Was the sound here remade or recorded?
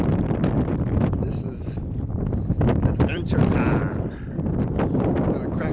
remade